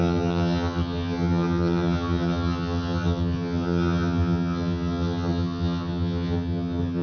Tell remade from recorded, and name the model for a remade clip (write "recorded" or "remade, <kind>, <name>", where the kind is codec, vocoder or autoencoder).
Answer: remade, vocoder, HiFi-GAN